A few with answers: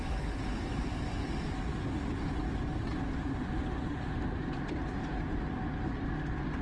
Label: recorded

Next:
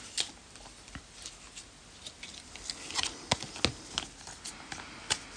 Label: recorded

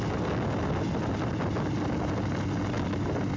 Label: recorded